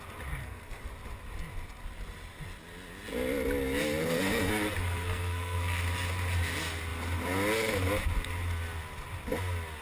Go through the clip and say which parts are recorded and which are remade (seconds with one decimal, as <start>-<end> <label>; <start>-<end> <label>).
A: 0.0-0.4 recorded; 0.4-0.9 remade; 0.9-4.0 recorded; 4.0-5.8 remade; 5.8-9.8 recorded